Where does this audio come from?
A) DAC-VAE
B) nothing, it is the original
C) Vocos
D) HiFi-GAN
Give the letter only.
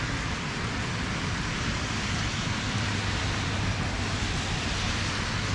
B